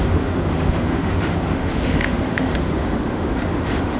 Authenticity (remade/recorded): remade